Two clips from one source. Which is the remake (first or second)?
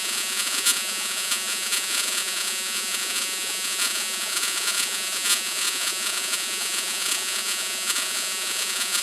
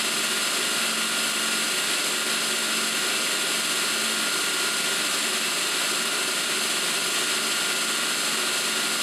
first